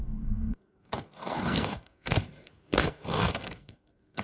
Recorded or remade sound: remade